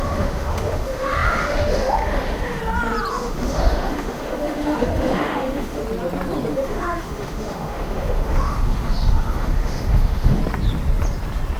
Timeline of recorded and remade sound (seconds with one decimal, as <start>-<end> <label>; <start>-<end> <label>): 0.0-2.6 remade; 2.6-3.1 recorded; 3.1-5.8 remade; 5.8-6.5 recorded; 6.5-10.4 remade; 10.4-11.6 recorded